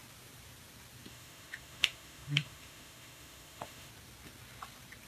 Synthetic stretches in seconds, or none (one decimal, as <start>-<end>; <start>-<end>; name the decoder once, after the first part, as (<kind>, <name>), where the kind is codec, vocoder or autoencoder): 1.1-3.9 (autoencoder, DAC-VAE)